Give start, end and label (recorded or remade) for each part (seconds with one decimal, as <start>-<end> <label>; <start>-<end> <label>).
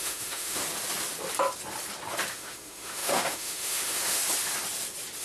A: 0.0-0.6 remade; 0.6-2.3 recorded; 2.3-4.2 remade; 4.2-5.2 recorded